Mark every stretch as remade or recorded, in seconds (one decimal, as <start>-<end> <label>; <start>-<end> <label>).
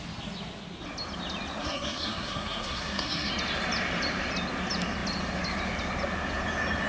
0.0-1.6 recorded; 1.6-3.3 remade; 3.3-6.9 recorded